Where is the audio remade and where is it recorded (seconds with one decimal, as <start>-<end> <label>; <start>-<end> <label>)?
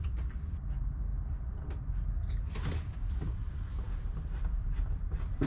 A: 0.0-5.5 recorded